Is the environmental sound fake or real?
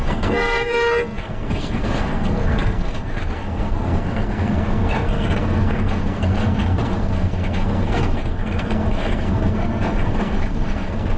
fake